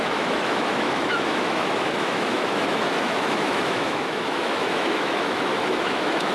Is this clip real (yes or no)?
no